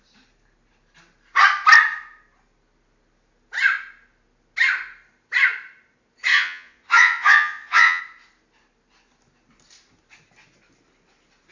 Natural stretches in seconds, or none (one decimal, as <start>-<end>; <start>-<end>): 0.0-6.3; 8.0-11.5